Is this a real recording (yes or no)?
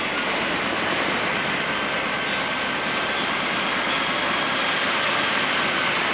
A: yes